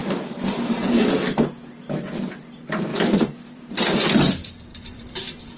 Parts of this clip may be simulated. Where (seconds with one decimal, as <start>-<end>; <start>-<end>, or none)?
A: 2.9-4.3; 4.7-5.6